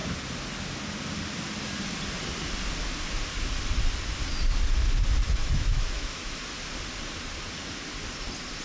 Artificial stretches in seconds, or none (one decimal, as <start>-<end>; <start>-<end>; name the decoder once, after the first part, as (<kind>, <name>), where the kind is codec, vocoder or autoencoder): 5.4-6.4 (autoencoder, DAC-VAE)